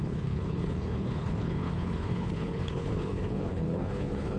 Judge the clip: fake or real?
fake